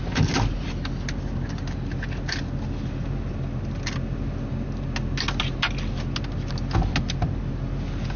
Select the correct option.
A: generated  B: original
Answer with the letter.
B